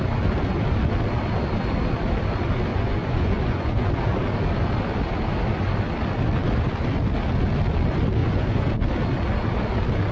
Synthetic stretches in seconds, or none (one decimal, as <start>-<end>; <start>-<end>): 2.7-3.9; 8.2-8.7